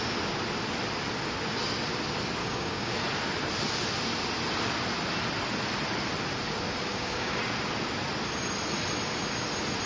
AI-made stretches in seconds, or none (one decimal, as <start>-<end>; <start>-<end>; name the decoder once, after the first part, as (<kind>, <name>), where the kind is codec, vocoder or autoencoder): 2.4-2.9 (codec, DAC); 6.9-7.4